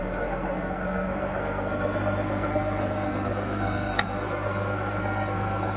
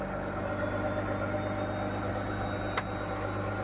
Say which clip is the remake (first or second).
first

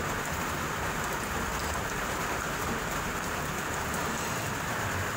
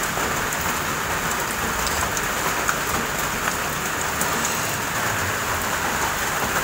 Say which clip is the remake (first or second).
first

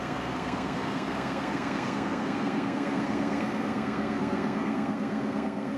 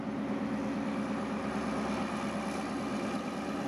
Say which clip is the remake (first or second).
first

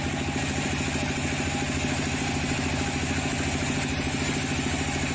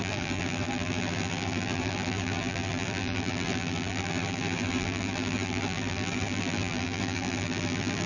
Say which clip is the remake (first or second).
second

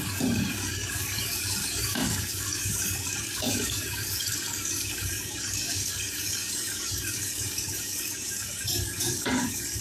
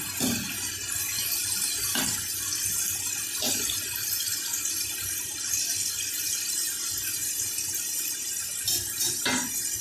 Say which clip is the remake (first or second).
first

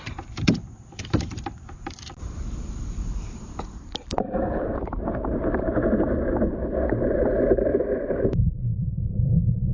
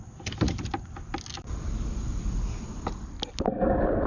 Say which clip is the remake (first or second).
first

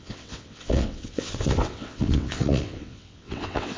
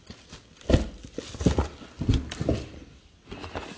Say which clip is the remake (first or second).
first